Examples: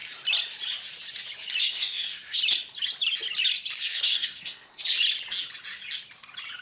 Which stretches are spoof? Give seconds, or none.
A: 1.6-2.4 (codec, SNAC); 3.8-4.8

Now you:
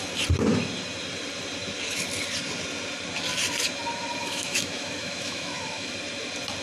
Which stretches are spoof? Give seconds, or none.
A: 4.2-5.9 (autoencoder, DAC-VAE)

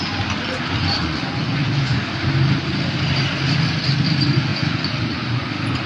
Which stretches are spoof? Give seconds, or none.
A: 1.0-2.0 (vocoder, Vocos); 4.5-5.5

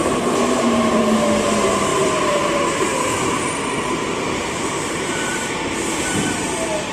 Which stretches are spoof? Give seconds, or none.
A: 0.0-1.0 (vocoder, BigVGAN v2); 1.9-6.0

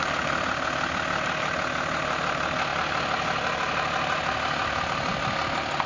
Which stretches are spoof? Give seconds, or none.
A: none

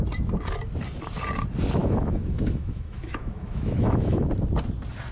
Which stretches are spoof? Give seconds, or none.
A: 1.8-4.3 (autoencoder, DAC-VAE)

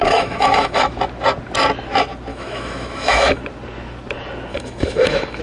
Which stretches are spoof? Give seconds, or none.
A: 0.0-0.9 (autoencoder, DAC-VAE); 2.3-3.4; 4.5-5.4